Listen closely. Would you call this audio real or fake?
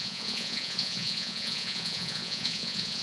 fake